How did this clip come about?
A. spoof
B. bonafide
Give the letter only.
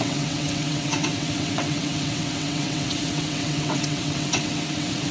A